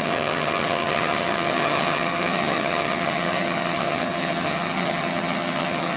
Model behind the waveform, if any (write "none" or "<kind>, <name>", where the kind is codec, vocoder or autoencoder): vocoder, HiFi-GAN